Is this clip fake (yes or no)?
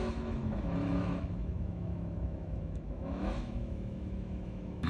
yes